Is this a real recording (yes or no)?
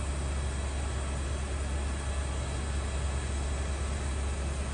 yes